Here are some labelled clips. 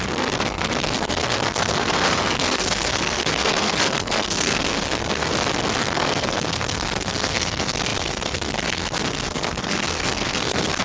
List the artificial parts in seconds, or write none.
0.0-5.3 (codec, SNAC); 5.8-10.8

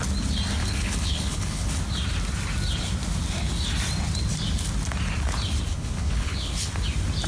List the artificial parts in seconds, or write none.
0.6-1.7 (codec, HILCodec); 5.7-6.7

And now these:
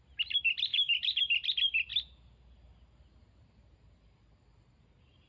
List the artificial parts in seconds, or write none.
0.7-1.2 (autoencoder, DAC-VAE)

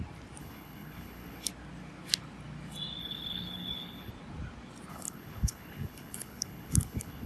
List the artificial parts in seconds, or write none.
0.4-1.5 (codec, HILCodec); 3.0-4.1; 4.9-7.3

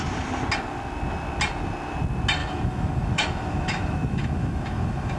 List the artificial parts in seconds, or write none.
2.4-5.2 (autoencoder, DAC-VAE)